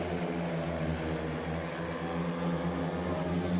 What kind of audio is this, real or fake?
real